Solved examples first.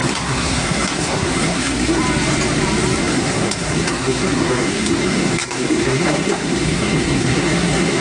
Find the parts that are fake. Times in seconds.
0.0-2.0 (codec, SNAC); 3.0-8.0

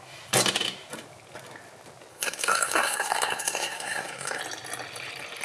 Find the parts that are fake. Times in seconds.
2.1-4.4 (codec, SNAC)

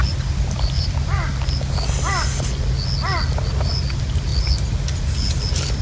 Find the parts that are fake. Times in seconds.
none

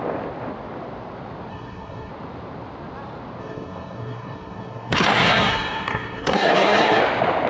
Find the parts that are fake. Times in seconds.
1.5-2.1 (codec, SNAC); 3.4-7.0